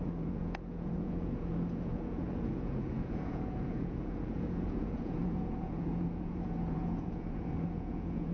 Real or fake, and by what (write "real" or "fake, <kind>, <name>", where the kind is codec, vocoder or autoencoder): fake, vocoder, Vocos